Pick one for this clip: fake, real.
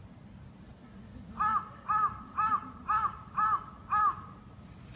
real